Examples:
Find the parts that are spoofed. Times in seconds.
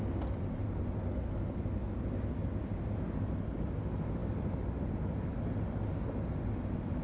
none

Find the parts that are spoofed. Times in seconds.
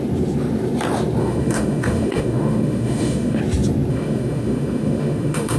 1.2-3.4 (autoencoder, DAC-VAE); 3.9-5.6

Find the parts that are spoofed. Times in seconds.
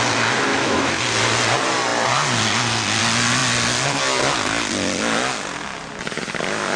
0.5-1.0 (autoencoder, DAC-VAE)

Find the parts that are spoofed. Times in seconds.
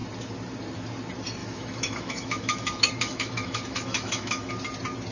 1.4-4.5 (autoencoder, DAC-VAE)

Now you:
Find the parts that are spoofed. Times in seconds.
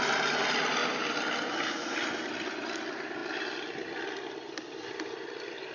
none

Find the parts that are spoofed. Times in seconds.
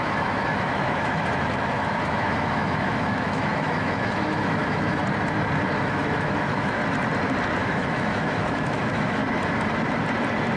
0.0-5.0 (autoencoder, DAC-VAE); 5.8-6.8; 7.6-9.2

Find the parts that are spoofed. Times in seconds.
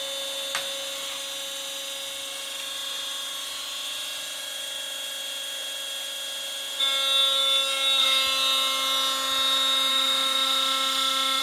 9.9-11.4 (autoencoder, DAC-VAE)